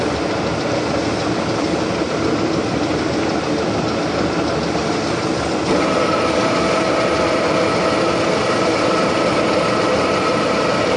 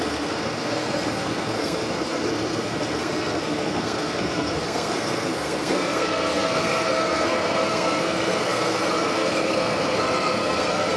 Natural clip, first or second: first